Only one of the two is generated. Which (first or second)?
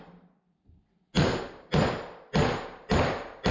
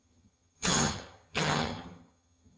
second